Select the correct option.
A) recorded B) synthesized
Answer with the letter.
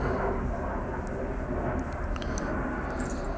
A